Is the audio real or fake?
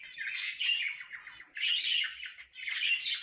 real